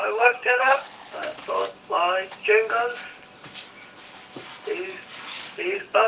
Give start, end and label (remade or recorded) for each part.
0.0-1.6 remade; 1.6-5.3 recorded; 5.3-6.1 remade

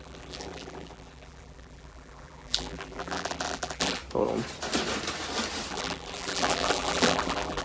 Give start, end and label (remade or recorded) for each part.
0.0-4.0 remade; 4.0-5.7 recorded; 5.7-7.6 remade

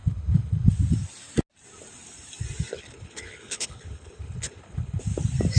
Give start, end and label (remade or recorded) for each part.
0.0-0.7 remade; 0.7-2.7 recorded; 2.7-5.0 remade; 5.0-5.6 recorded

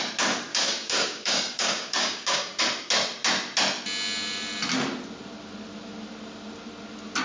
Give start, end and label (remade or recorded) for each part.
0.0-0.5 recorded; 0.5-2.6 remade; 2.6-7.2 recorded

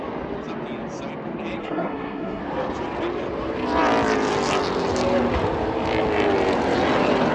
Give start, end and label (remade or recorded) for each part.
0.0-1.6 recorded; 1.6-2.4 remade; 2.4-7.3 recorded